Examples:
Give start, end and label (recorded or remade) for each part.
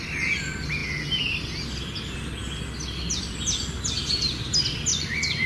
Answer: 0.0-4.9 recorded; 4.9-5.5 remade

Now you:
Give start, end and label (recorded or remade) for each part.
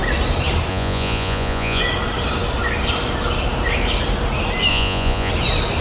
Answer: 0.0-0.7 recorded; 0.7-1.8 remade; 1.8-4.7 recorded; 4.7-5.3 remade; 5.3-5.8 recorded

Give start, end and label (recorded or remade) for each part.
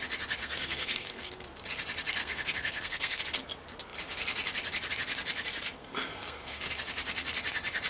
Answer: 0.0-0.4 recorded; 0.4-1.3 remade; 1.3-2.2 recorded; 2.2-3.2 remade; 3.2-5.8 recorded; 5.8-6.7 remade; 6.7-7.9 recorded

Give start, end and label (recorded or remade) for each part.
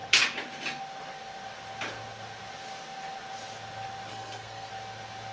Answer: 0.0-4.1 recorded; 4.1-4.7 remade; 4.7-5.3 recorded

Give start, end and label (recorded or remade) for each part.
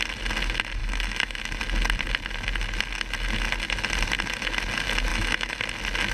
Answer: 0.0-0.8 recorded; 0.8-1.4 remade; 1.4-5.1 recorded; 5.1-5.6 remade; 5.6-6.1 recorded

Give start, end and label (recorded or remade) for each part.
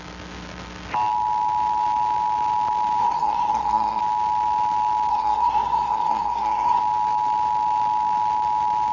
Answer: 0.0-3.0 recorded; 3.0-4.0 remade; 4.0-5.1 recorded; 5.1-6.8 remade; 6.8-8.9 recorded